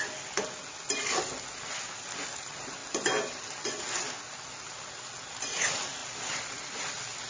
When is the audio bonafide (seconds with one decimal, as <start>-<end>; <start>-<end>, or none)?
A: 0.0-7.3